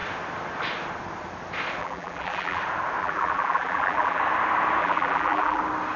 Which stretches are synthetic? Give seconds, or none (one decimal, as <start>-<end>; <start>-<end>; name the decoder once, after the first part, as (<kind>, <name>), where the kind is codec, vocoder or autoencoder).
1.8-2.6 (vocoder, BigVGAN v2); 3.0-4.2; 4.8-5.6